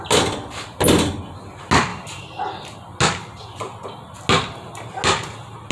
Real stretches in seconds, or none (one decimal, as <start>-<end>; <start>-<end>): 0.0-5.7